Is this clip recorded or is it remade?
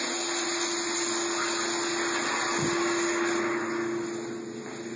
recorded